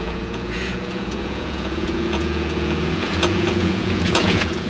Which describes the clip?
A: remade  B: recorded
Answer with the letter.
A